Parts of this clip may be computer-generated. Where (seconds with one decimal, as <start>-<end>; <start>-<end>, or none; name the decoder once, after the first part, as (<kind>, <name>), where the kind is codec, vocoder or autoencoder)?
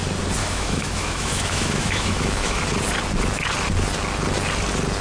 0.4-2.6 (autoencoder, DAC-VAE)